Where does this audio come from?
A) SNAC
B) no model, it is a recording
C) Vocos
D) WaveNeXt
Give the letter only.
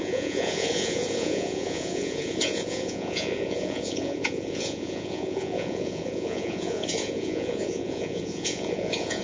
C